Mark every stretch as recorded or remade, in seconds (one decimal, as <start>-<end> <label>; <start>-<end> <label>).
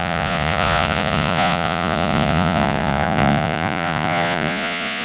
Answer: 0.0-5.0 remade